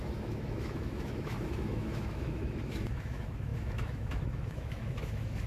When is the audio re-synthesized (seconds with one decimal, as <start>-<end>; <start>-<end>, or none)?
0.0-5.5